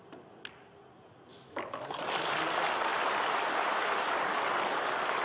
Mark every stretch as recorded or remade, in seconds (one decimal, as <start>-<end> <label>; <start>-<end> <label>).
0.0-1.3 recorded; 1.3-1.9 remade; 1.9-5.2 recorded